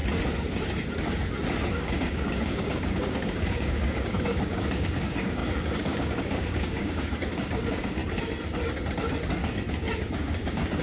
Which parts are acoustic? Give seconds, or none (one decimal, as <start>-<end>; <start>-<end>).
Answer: 0.0-1.7; 8.0-9.7